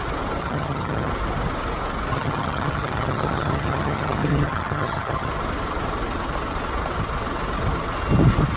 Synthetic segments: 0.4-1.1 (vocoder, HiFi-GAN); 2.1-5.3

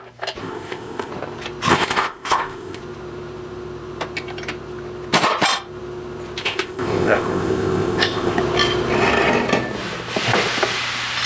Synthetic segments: 0.4-1.1 (codec, ZipCodec); 1.7-2.8; 6.4-8.4

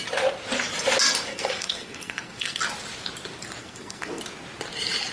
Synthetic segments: 1.3-2.6 (codec, SNAC); 3.6-4.2

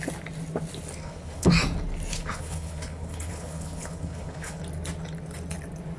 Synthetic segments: 1.0-1.5 (codec, HILCodec); 2.1-4.6